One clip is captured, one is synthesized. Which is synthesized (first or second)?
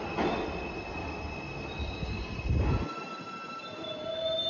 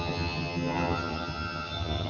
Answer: second